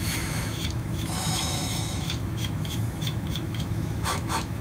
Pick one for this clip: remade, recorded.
remade